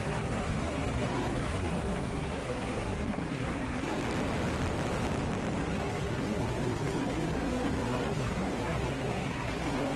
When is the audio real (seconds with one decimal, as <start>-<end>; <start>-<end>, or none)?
4.0-5.6